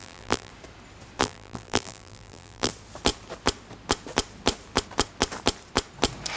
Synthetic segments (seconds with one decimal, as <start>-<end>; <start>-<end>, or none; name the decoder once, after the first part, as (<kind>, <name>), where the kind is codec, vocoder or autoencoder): 0.0-0.5 (vocoder, BigVGAN v2); 1.2-2.7